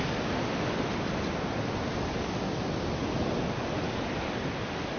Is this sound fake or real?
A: real